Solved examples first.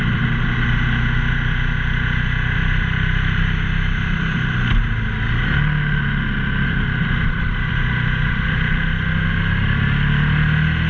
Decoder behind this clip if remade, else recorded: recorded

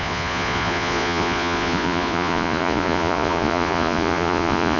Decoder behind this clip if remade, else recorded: remade, vocoder, Vocos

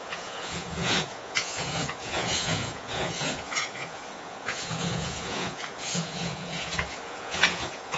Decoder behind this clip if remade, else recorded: remade, vocoder, Vocos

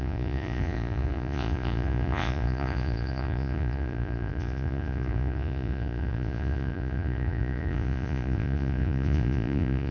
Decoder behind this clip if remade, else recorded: remade, vocoder, Vocos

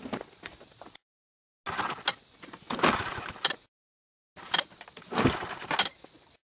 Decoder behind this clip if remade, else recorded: recorded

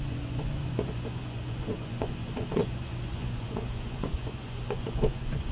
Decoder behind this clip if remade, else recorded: remade, vocoder, Vocos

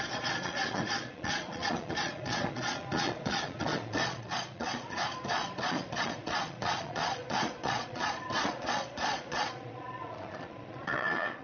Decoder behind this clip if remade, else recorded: remade, vocoder, Vocos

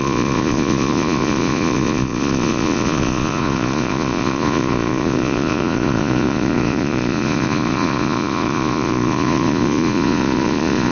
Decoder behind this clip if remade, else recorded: remade, vocoder, Vocos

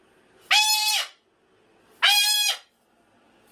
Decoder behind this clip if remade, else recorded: recorded